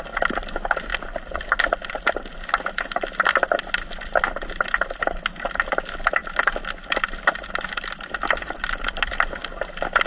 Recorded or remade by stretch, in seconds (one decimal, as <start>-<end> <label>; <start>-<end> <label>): 0.0-10.1 recorded